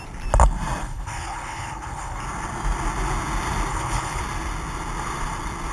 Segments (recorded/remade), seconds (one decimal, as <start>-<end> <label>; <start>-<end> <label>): 0.0-0.8 recorded; 0.8-2.2 remade; 2.2-3.7 recorded; 3.7-4.2 remade; 4.2-5.7 recorded